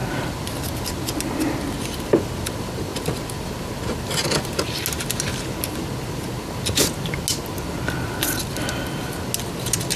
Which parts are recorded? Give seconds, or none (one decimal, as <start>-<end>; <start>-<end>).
0.0-10.0